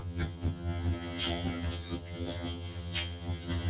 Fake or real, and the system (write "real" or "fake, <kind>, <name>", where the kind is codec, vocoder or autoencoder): fake, vocoder, HiFi-GAN